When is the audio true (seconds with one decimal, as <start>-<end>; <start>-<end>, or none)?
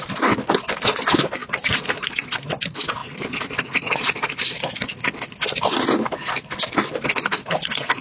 0.0-1.4; 2.1-8.0